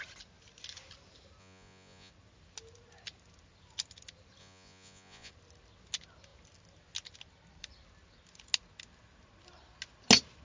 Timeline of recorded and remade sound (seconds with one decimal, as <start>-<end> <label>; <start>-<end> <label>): 0.0-1.4 recorded; 1.4-2.1 remade; 2.1-4.4 recorded; 4.4-5.3 remade; 5.3-10.4 recorded